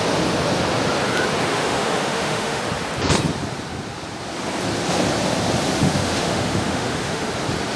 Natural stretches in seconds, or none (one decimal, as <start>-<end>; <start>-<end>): 0.0-1.5; 2.6-5.8; 7.3-7.8